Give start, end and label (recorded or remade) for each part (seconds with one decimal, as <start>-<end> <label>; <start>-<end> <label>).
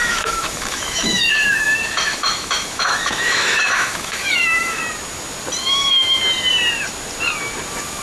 0.0-4.8 remade; 4.8-5.6 recorded; 5.6-6.2 remade; 6.2-8.0 recorded